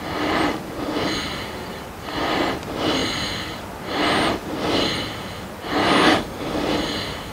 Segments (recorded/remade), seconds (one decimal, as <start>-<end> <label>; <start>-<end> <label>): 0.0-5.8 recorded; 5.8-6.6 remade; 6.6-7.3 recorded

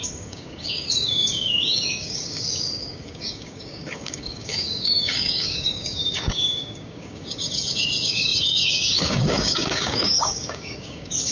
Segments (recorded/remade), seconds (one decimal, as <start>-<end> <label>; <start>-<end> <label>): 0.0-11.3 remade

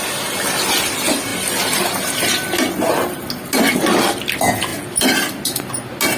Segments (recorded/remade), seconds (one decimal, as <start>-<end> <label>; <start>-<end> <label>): 0.0-6.2 recorded

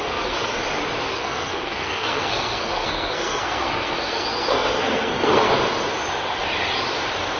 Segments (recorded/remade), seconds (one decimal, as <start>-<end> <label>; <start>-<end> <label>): 0.0-0.5 remade; 0.5-1.1 recorded; 1.1-5.5 remade; 5.5-7.4 recorded

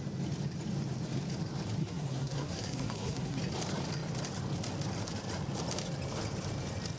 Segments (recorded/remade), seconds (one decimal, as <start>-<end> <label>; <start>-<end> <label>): 0.0-1.8 recorded; 1.8-3.4 remade; 3.4-7.0 recorded

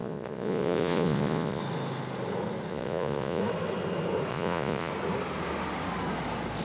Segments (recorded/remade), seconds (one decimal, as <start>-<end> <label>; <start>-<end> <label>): 0.0-1.6 remade; 1.6-2.7 recorded; 2.7-3.4 remade; 3.4-4.3 recorded; 4.3-4.9 remade; 4.9-6.6 recorded